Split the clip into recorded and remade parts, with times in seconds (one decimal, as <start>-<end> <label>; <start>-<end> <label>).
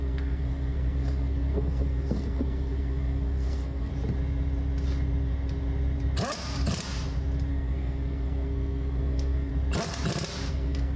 0.0-3.9 remade; 3.9-7.5 recorded; 7.5-9.5 remade; 9.5-10.5 recorded; 10.5-11.0 remade